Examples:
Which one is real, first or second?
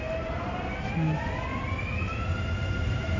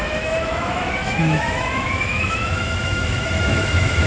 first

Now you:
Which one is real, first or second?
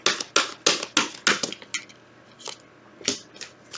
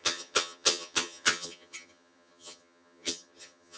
first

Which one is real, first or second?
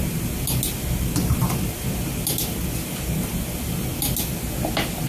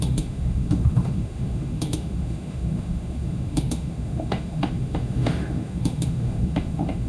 first